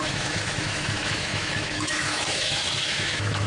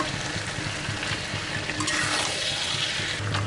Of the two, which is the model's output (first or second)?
first